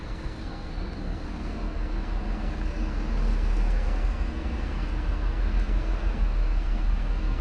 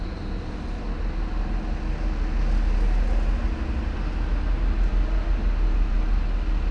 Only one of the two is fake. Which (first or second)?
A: first